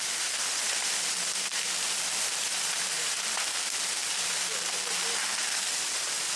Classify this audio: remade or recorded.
recorded